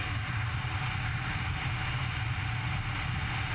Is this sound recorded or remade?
recorded